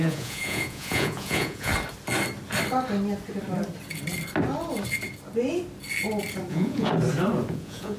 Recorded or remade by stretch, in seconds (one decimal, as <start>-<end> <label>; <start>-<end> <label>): 0.0-1.7 remade; 1.7-6.5 recorded; 6.5-6.9 remade; 6.9-7.5 recorded; 7.5-8.0 remade